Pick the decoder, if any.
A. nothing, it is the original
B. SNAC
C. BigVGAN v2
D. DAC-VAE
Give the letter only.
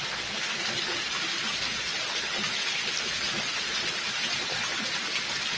A